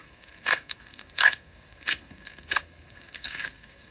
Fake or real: fake